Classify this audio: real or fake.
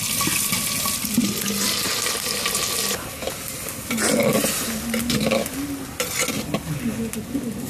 real